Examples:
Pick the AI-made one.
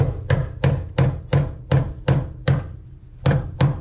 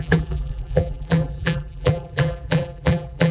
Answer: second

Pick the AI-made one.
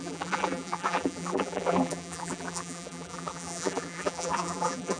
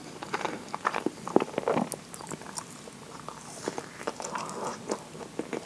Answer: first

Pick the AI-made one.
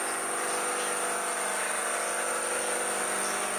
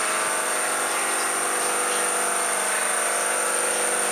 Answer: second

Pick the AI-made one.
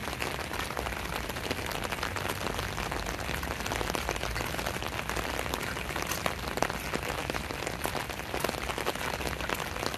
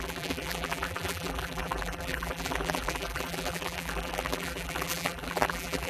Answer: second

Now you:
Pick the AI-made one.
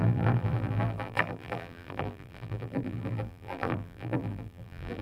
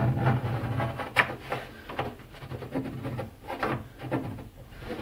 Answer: first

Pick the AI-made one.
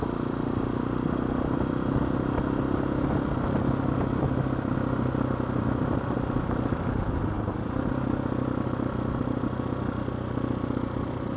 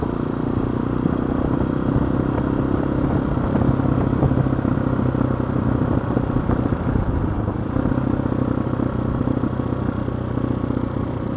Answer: second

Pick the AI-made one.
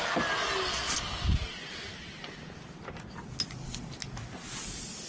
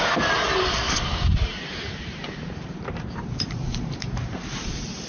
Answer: second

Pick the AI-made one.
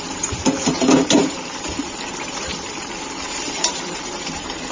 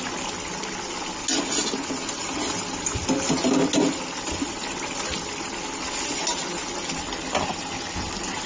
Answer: first